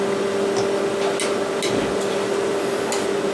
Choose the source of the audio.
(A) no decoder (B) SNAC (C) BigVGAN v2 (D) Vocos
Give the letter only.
A